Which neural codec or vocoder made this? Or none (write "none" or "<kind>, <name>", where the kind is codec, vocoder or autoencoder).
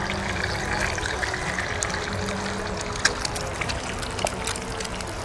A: none